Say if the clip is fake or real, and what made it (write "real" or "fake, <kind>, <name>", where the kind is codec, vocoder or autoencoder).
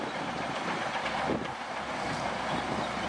fake, vocoder, BigVGAN v2